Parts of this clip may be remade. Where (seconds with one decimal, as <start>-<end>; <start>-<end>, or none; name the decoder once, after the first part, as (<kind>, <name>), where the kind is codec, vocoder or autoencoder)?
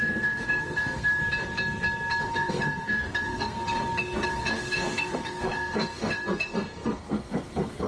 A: 0.0-1.2 (codec, SNAC); 2.2-3.8; 4.3-7.9